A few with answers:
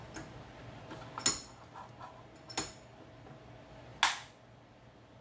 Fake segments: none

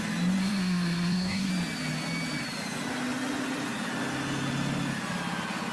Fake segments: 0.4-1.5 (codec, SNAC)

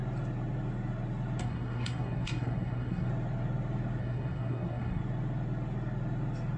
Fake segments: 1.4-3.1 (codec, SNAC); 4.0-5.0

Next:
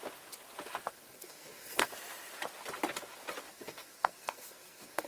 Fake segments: 0.9-1.9 (codec, SNAC); 3.5-5.1

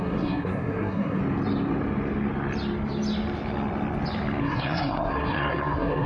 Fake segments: 0.0-1.2 (codec, SNAC); 4.4-6.1

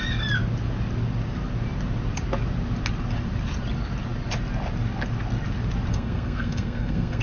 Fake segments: 5.9-7.2 (codec, SNAC)

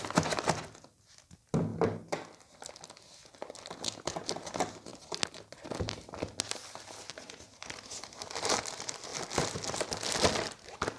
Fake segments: none

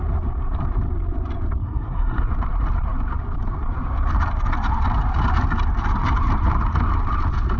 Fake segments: 1.6-2.2 (codec, SNAC)